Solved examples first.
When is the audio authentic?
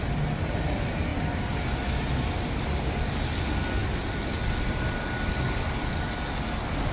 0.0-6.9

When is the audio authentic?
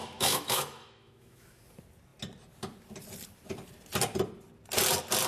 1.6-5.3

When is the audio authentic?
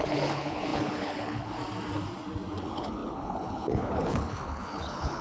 1.6-2.6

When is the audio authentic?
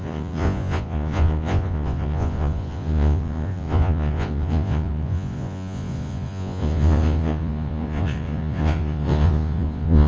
none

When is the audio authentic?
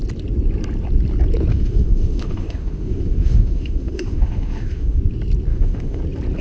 0.0-1.5; 5.0-5.5; 6.0-6.4